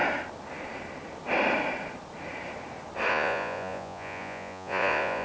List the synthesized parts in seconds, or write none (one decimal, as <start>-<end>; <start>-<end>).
3.1-5.2